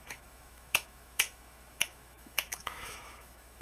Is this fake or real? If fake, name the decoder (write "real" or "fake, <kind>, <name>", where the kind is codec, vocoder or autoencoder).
fake, autoencoder, DAC-VAE